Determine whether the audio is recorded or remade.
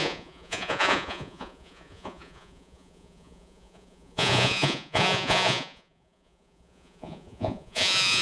remade